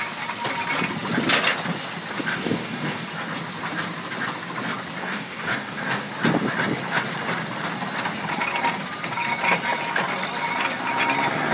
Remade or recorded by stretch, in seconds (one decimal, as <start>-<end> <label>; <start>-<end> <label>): 0.0-2.3 recorded; 2.3-3.1 remade; 3.1-5.0 recorded; 5.0-6.1 remade; 6.1-11.5 recorded